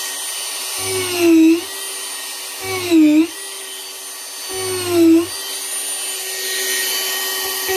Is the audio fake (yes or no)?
no